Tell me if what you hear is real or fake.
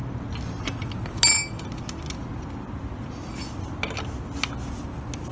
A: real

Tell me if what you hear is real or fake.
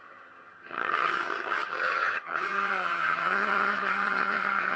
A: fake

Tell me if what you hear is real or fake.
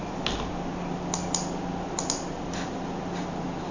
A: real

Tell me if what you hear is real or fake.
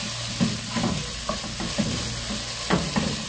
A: real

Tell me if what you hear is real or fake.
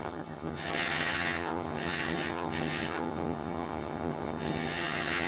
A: fake